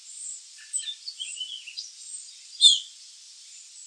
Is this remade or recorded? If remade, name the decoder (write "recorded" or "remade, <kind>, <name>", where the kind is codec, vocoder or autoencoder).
recorded